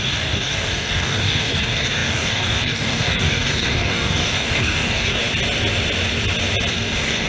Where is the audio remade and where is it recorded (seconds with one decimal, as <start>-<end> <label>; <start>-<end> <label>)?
0.0-5.2 remade; 5.2-6.7 recorded; 6.7-7.3 remade